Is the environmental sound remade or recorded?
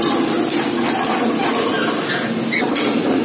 recorded